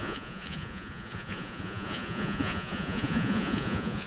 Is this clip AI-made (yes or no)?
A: yes